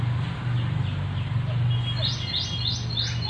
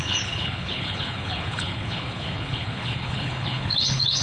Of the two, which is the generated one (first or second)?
second